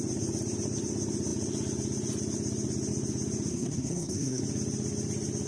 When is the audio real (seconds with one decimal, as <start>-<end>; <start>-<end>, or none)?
0.0-3.5; 4.4-5.5